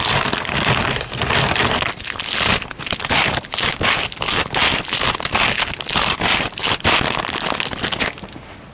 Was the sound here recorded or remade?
recorded